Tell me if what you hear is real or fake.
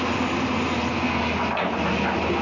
real